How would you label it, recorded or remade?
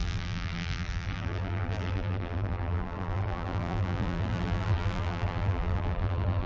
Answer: remade